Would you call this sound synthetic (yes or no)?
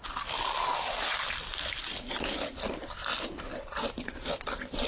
yes